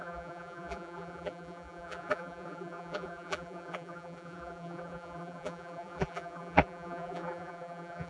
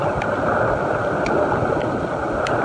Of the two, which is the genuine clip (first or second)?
second